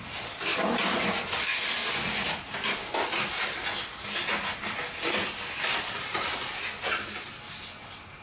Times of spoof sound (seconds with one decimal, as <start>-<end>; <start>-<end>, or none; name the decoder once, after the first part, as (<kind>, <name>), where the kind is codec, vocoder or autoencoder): none